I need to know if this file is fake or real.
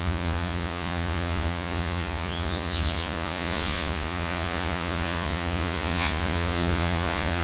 fake